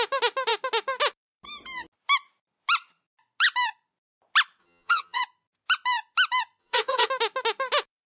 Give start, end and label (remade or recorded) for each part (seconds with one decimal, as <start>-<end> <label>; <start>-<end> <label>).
0.0-4.6 recorded; 4.6-5.2 remade; 5.2-6.6 recorded; 6.6-7.1 remade; 7.1-8.1 recorded